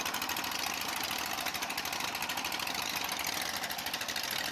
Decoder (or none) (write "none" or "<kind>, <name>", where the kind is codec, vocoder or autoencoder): none